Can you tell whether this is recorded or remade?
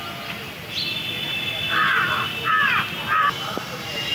recorded